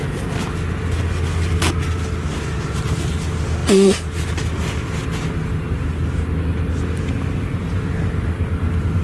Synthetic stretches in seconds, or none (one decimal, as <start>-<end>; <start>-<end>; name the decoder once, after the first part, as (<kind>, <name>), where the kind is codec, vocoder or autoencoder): none